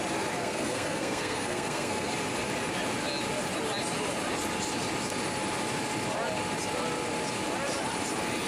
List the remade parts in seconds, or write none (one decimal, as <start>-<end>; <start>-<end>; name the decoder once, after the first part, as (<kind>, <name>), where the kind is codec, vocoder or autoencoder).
0.4-2.1 (codec, SNAC)